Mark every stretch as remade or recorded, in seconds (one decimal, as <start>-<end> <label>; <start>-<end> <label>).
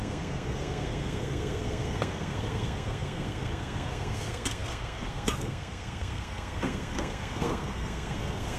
0.0-8.6 remade